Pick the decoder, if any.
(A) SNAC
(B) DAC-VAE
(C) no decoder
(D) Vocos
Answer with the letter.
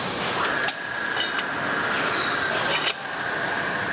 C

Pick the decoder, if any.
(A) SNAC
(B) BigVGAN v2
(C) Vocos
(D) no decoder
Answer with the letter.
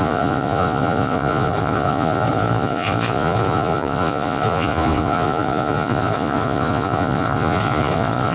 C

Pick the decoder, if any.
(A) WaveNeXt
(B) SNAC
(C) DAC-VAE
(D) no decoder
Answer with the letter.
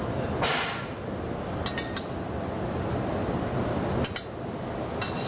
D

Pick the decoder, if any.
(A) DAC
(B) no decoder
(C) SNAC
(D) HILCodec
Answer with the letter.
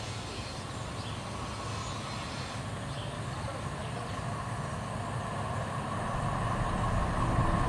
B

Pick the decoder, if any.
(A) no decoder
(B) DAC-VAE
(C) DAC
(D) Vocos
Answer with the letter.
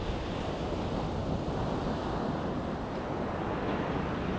A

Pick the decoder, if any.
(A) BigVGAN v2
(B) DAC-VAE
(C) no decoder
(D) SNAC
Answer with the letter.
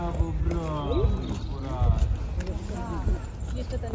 C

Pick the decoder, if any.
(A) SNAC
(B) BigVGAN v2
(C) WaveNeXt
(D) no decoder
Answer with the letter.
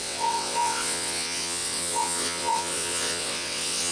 C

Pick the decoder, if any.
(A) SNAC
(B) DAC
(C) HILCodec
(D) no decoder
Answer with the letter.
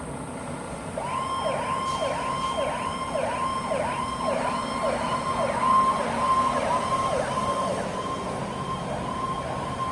D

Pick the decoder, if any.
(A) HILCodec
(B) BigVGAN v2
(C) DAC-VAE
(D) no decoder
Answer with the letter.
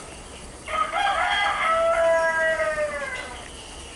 D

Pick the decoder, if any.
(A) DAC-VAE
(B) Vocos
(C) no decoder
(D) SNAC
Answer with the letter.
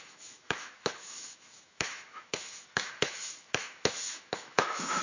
A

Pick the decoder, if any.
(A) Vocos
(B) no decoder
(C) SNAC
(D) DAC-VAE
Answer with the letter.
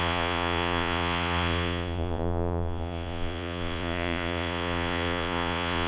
A